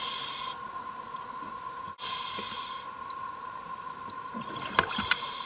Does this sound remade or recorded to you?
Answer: recorded